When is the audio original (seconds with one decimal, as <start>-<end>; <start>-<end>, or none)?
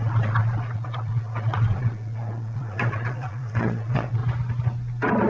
4.2-5.3